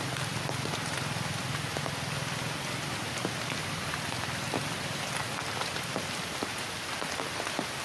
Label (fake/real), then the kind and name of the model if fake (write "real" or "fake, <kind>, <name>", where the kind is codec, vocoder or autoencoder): real